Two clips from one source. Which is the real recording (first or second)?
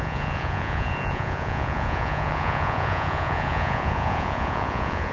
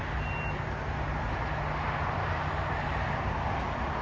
second